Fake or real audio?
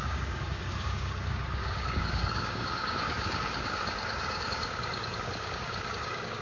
fake